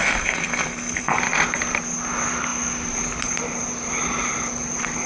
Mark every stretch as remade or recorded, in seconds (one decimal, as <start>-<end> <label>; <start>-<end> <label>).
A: 0.0-1.2 remade; 1.2-5.1 recorded